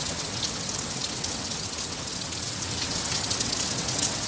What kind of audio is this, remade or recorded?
remade